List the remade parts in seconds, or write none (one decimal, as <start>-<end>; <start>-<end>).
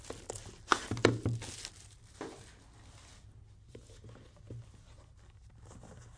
none